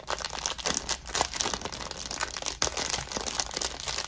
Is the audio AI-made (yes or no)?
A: no